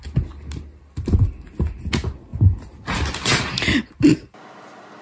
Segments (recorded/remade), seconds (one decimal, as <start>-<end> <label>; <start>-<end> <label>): 0.0-5.0 recorded